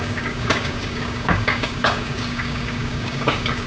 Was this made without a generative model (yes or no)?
no